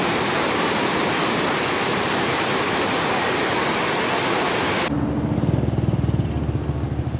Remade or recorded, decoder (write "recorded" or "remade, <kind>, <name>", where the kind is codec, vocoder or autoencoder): recorded